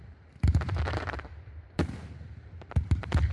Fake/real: fake